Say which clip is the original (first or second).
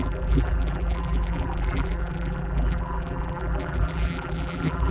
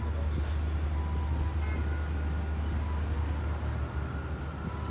second